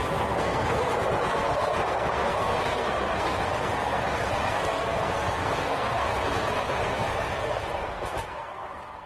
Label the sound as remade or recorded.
remade